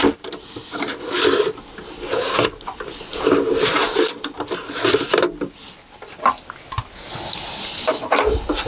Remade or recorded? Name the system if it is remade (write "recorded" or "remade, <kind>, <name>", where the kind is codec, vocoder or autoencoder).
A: recorded